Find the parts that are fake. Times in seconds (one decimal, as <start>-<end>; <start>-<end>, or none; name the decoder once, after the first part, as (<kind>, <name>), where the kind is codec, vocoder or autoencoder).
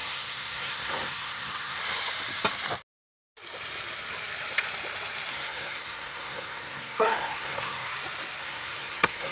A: 0.0-1.8 (codec, SNAC); 5.3-7.9; 8.4-9.3